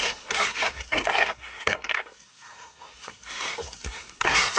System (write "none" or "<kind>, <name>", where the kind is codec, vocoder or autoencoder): codec, SNAC